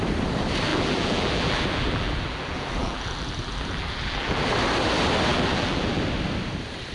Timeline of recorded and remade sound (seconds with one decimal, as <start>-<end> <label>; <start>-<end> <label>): 0.0-0.7 recorded; 0.7-4.5 remade; 4.5-5.3 recorded; 5.3-6.0 remade; 6.0-6.9 recorded